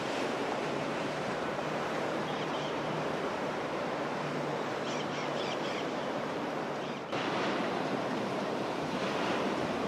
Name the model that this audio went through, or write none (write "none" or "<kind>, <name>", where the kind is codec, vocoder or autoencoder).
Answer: vocoder, BigVGAN v2